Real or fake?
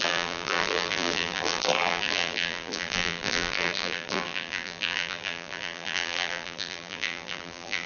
fake